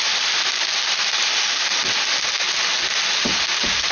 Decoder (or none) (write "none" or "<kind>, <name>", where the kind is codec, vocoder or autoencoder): none